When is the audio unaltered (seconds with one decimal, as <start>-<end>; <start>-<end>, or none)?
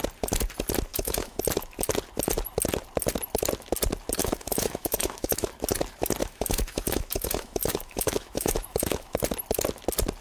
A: 0.0-0.9; 1.4-4.2; 5.5-6.2; 9.2-10.2